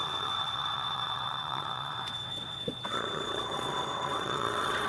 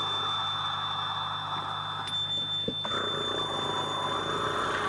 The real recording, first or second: second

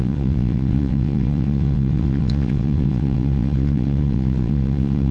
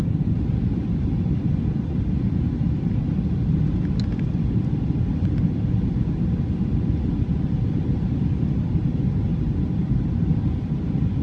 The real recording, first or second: second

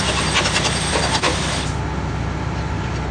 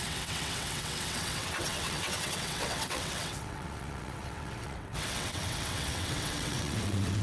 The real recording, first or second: first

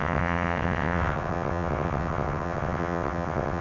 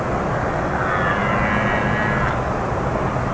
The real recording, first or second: second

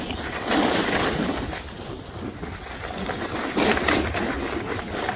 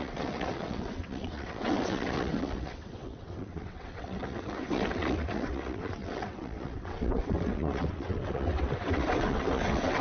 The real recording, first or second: first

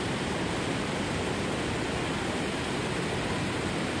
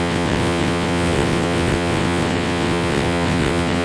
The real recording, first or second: first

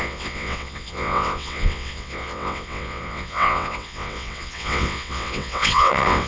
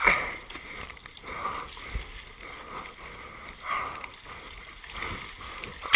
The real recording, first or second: second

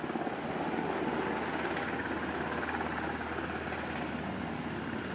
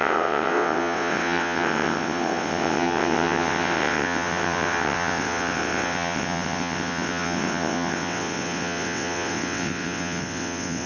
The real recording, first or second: first